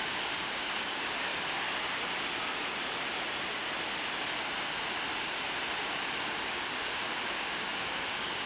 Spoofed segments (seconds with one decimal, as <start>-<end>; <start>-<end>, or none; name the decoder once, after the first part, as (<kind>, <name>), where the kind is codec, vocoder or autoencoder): 0.0-1.3 (codec, DAC); 6.4-8.5